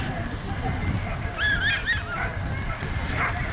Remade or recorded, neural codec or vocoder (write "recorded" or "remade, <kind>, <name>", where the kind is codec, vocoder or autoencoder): recorded